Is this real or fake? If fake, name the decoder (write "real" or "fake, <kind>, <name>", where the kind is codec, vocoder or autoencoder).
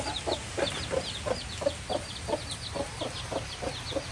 real